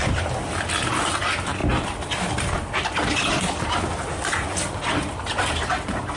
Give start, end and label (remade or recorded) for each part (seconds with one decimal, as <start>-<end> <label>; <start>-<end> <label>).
0.0-6.2 recorded